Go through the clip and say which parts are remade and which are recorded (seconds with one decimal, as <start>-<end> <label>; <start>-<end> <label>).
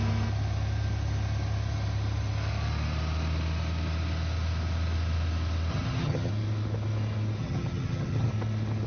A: 0.0-5.7 recorded; 5.7-6.3 remade; 6.3-7.4 recorded; 7.4-8.3 remade; 8.3-8.9 recorded